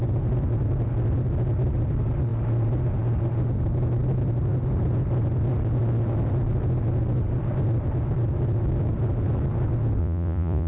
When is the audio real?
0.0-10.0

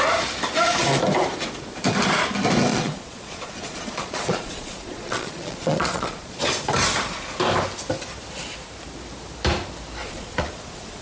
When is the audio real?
0.0-2.7; 6.4-10.0